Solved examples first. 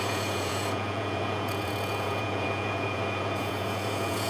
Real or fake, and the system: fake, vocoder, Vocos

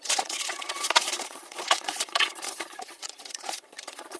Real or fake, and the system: fake, vocoder, Vocos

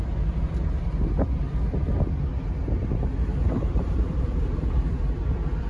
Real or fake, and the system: real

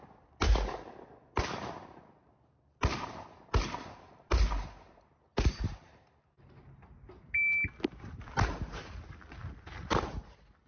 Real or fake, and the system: real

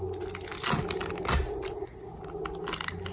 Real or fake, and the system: real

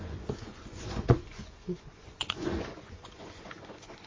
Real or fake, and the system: fake, vocoder, Vocos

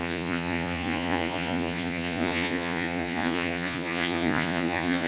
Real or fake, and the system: fake, vocoder, Vocos